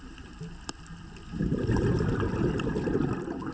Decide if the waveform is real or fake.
fake